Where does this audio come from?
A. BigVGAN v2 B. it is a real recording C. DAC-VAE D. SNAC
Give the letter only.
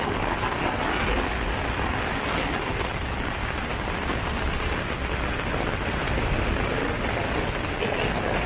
B